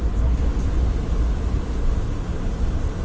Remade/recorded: recorded